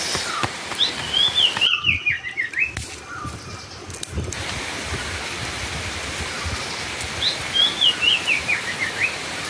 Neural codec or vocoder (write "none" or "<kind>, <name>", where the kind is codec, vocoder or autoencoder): none